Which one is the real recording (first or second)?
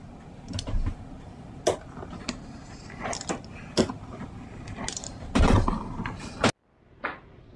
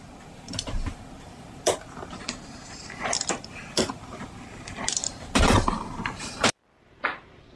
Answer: first